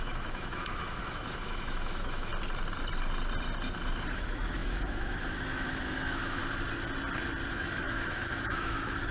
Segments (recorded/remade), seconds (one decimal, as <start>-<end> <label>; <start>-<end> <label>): 0.0-2.3 remade; 2.3-4.1 recorded; 4.1-6.4 remade; 6.4-7.5 recorded; 7.5-9.1 remade